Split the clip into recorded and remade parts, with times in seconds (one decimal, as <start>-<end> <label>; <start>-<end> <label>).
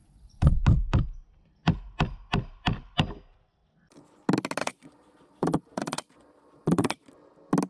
0.0-0.6 remade; 0.6-4.6 recorded; 4.6-7.1 remade; 7.1-7.7 recorded